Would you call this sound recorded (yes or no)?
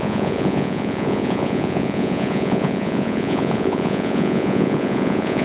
no